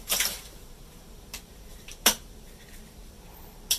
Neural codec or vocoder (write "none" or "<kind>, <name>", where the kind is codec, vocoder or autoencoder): vocoder, BigVGAN v2